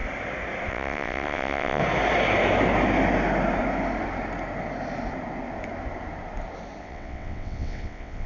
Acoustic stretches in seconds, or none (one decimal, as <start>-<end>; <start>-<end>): 0.0-0.7; 1.8-6.8